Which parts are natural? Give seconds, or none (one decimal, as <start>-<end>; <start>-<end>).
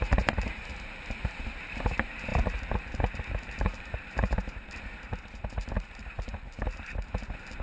none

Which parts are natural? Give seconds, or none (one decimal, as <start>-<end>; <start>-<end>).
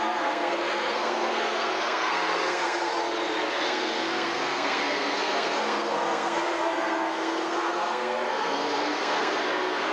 2.9-3.5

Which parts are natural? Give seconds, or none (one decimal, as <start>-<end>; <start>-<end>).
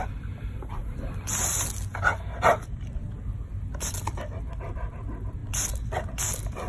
0.0-6.7